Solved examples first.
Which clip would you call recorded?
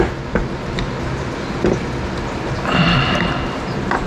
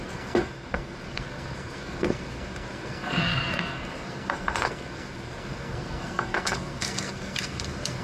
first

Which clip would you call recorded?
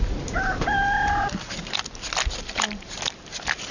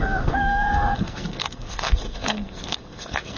first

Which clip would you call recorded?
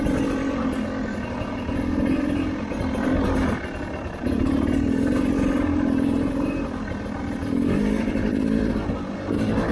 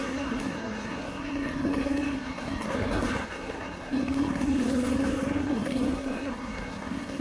first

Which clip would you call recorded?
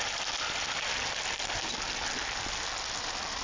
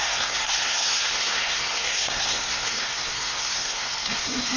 first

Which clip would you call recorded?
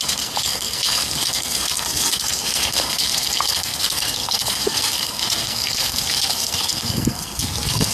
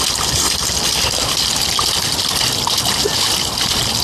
second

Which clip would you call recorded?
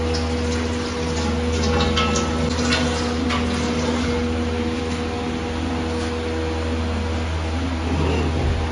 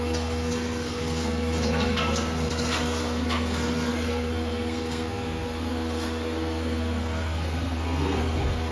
first